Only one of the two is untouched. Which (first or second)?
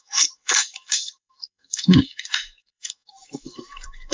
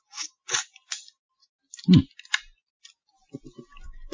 second